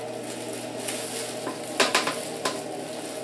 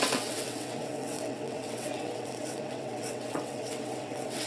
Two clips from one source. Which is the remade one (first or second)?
second